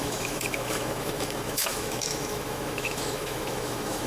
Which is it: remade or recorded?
remade